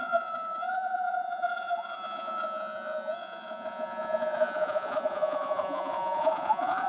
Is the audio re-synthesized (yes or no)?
yes